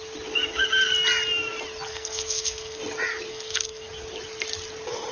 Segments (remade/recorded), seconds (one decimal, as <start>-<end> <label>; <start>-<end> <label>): 0.0-1.9 recorded; 1.9-2.8 remade; 2.8-3.3 recorded; 3.3-3.9 remade; 3.9-5.1 recorded